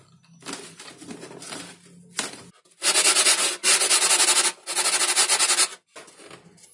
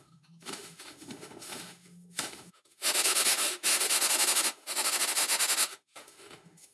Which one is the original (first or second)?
first